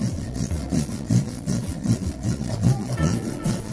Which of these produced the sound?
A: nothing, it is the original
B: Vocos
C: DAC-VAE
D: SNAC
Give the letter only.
B